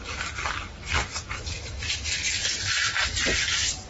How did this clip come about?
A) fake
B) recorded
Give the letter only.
B